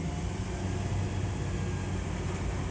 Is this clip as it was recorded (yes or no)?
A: yes